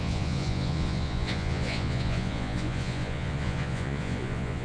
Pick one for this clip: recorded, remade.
remade